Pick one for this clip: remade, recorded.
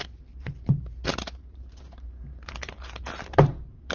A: remade